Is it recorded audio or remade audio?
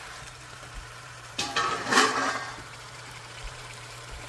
remade